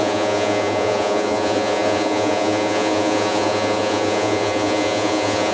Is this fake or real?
fake